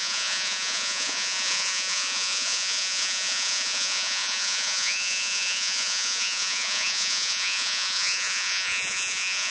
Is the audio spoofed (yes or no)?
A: yes